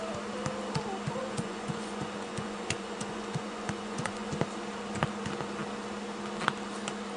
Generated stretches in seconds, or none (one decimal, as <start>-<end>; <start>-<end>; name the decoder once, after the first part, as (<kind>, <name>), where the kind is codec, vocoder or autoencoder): 1.2-4.3 (vocoder, Vocos)